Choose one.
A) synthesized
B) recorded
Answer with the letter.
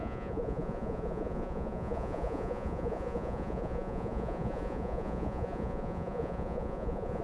A